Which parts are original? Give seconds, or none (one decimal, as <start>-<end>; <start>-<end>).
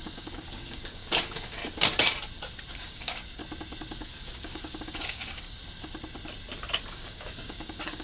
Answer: 1.6-2.7; 3.4-4.0; 5.6-6.9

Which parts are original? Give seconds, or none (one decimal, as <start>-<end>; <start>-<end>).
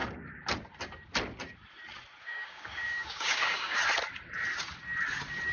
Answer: 0.0-2.2; 3.8-5.5